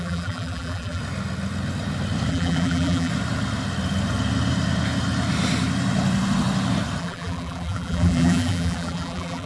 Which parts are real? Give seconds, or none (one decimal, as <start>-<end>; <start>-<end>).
1.0-2.3; 3.1-7.0